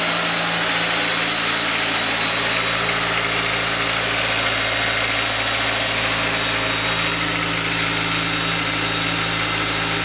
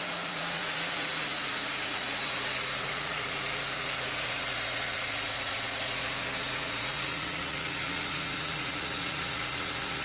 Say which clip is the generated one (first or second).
second